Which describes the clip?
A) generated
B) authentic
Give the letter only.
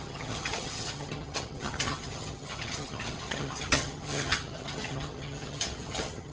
A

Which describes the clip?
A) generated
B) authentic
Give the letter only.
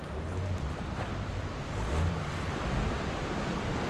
B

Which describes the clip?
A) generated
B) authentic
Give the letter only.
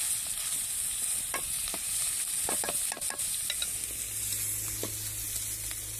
B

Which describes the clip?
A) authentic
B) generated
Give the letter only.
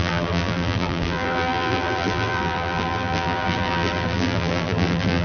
B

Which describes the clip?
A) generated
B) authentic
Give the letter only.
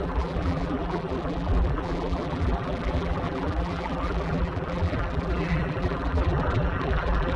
A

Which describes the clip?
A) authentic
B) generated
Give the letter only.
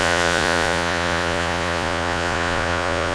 B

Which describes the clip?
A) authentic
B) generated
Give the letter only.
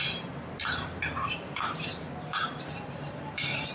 B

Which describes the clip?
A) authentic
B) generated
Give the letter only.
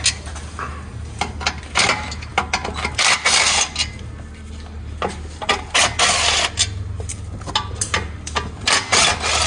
A